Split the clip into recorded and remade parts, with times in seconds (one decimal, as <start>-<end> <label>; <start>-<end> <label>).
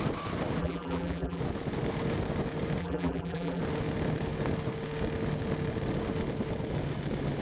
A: 0.0-0.6 recorded; 0.6-1.4 remade; 1.4-2.8 recorded; 2.8-3.6 remade; 3.6-7.4 recorded